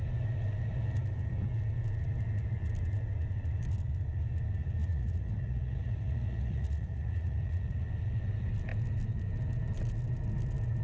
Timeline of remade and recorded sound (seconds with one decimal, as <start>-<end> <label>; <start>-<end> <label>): 0.0-4.8 recorded; 4.8-7.8 remade; 7.8-10.8 recorded